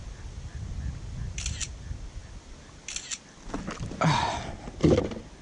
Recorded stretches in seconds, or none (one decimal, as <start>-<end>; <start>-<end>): 0.0-5.4